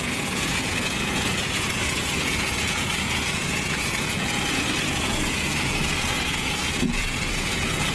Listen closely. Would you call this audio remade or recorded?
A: remade